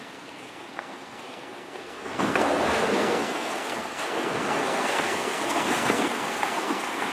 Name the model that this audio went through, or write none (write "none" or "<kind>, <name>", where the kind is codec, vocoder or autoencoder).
codec, SNAC